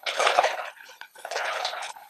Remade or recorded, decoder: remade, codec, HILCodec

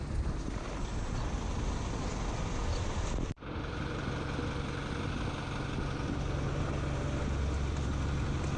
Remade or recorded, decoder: recorded